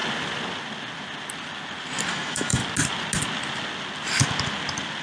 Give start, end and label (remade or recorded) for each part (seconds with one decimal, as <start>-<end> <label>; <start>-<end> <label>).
0.0-2.1 recorded; 2.1-2.6 remade; 2.6-5.0 recorded